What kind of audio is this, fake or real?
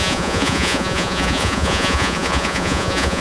fake